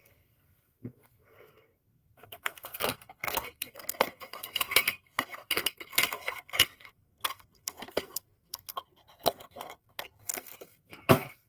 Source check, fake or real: fake